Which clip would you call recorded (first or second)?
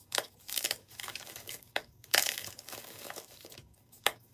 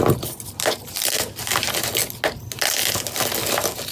second